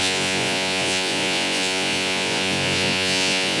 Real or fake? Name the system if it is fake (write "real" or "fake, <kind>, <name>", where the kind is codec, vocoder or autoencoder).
fake, vocoder, Vocos